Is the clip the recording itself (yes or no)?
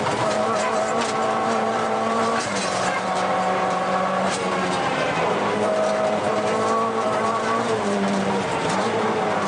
no